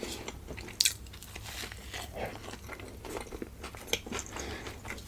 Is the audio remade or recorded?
recorded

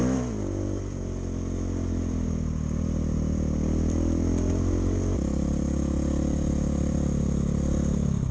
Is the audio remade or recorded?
recorded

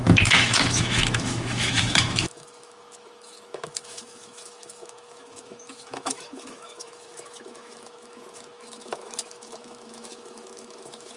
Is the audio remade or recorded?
remade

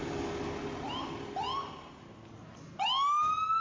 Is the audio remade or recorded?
recorded